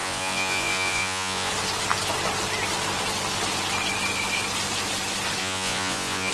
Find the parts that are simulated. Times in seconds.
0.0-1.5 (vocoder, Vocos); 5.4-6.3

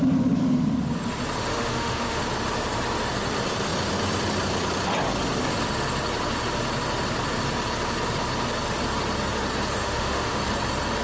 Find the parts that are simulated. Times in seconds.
1.5-2.2 (autoencoder, DAC-VAE); 9.8-10.4